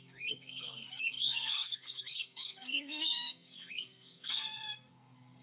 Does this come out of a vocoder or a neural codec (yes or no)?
yes